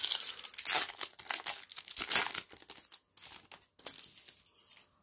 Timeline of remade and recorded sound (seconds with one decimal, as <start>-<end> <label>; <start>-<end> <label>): 0.0-5.0 recorded

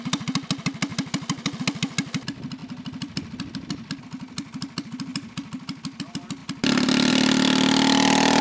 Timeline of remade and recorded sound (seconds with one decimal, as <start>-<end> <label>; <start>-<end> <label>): 0.0-0.9 recorded; 0.9-1.6 remade; 1.6-2.6 recorded; 2.6-3.9 remade; 3.9-5.1 recorded; 5.1-6.0 remade; 6.0-8.4 recorded

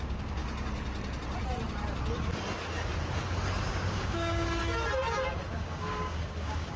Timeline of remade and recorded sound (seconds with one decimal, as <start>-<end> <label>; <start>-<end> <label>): 0.0-0.4 remade; 0.4-3.7 recorded; 3.7-4.6 remade; 4.6-5.5 recorded; 5.5-6.8 remade

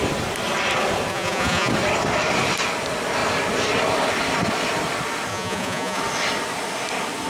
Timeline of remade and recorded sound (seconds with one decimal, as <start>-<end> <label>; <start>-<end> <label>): 0.0-1.1 recorded; 1.1-1.7 remade; 1.7-5.3 recorded; 5.3-6.0 remade; 6.0-7.3 recorded